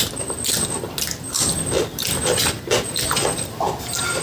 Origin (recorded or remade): recorded